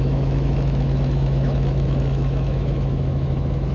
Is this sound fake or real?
fake